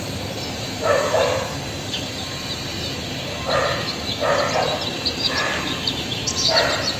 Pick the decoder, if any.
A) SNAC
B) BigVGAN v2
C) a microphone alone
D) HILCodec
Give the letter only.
B